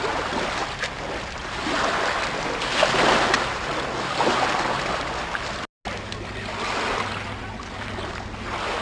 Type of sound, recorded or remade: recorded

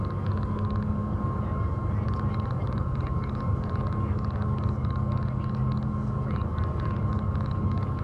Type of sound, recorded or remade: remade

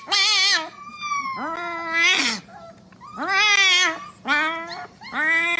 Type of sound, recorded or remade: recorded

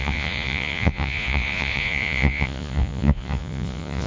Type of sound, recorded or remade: remade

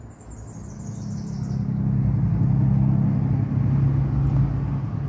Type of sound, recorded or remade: recorded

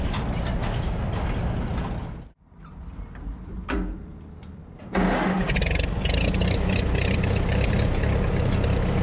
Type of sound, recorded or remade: recorded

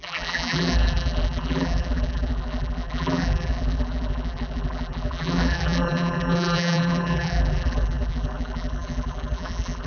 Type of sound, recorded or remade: remade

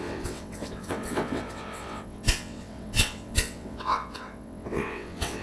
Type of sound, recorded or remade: remade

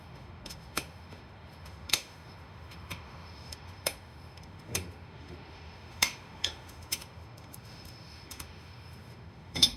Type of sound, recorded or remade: remade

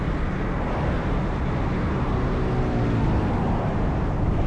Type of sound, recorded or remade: recorded